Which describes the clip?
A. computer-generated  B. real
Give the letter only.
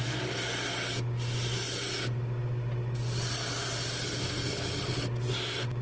B